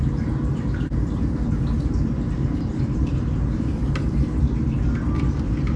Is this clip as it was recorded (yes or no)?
yes